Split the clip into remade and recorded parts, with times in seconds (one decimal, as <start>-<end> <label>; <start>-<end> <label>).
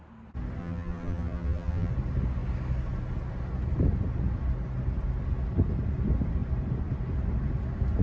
0.0-0.6 recorded; 0.6-1.9 remade; 1.9-8.0 recorded